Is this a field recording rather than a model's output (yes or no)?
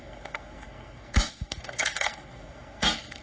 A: no